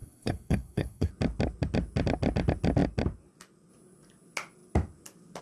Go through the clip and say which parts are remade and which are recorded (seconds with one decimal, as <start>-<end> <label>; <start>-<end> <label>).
0.0-1.1 remade; 1.1-5.4 recorded